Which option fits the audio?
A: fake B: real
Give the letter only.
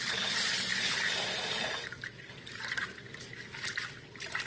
B